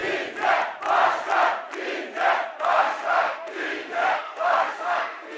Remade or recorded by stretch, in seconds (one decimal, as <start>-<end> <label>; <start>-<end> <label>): 0.0-2.6 recorded; 2.6-5.4 remade